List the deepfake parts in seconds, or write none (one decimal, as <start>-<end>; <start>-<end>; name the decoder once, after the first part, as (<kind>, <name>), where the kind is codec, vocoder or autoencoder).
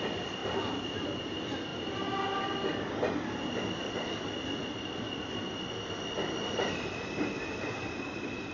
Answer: none